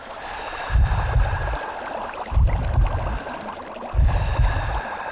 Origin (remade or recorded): remade